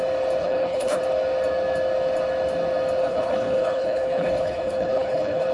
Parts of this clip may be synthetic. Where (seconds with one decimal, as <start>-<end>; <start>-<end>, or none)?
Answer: 0.4-1.0; 3.0-5.5

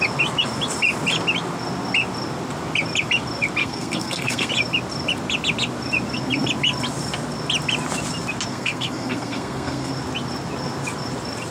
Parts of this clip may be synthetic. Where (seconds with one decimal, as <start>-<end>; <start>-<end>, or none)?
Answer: 3.6-4.5; 8.5-9.9

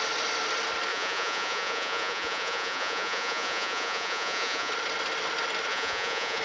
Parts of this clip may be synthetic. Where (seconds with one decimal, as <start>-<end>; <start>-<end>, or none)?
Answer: 0.9-4.7; 5.7-6.4

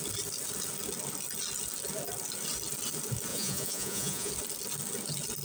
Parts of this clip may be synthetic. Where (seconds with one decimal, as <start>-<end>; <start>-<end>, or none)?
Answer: 3.3-4.3

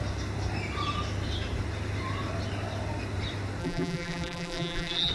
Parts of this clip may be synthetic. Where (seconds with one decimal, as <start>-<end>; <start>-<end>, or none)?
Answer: 3.6-5.1

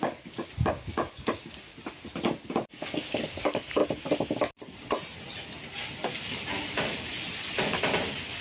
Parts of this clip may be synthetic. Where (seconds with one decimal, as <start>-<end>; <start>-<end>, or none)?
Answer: 0.0-1.7; 2.7-3.8